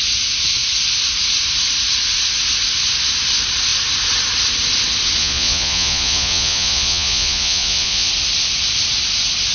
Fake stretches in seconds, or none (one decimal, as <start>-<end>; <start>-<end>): 5.2-8.1